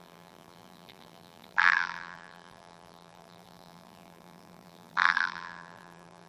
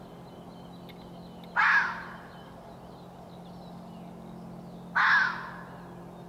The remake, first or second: first